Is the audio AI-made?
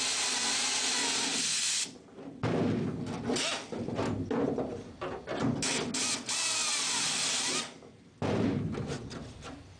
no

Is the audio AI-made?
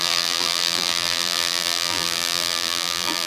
yes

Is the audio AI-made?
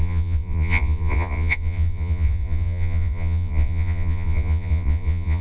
yes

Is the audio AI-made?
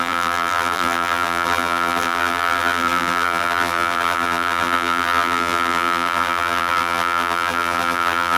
yes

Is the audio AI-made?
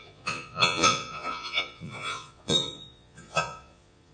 yes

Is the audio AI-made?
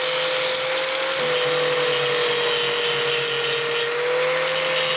no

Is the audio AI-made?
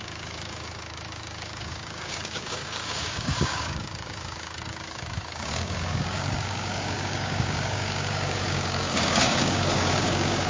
yes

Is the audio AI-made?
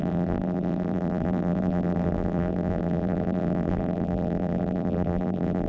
yes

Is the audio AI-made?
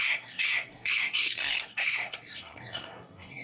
yes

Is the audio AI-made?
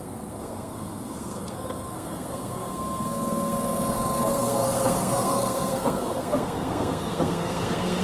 yes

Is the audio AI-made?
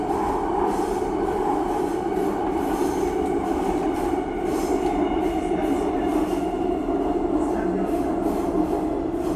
no